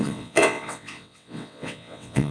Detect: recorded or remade remade